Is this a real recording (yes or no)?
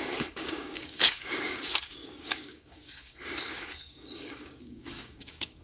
no